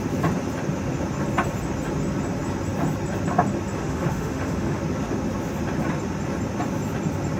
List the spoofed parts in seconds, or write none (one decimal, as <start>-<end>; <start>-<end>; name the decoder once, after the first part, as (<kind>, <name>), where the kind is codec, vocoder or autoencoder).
3.8-4.8 (autoencoder, DAC-VAE)